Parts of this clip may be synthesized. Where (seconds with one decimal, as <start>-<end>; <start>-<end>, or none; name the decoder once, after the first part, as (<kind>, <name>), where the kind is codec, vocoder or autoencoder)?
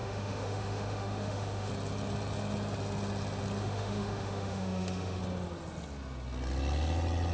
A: 0.0-1.7 (autoencoder, DAC-VAE); 3.6-5.2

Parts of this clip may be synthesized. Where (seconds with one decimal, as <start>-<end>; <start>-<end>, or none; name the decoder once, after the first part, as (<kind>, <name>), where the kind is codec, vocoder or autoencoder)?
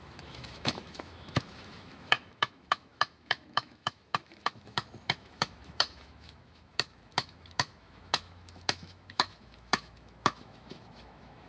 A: 0.0-11.5 (autoencoder, DAC-VAE)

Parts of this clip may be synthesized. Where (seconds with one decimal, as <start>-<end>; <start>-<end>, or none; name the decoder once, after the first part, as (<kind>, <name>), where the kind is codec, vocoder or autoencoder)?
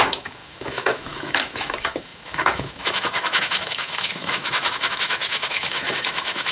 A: 0.0-6.5 (autoencoder, DAC-VAE)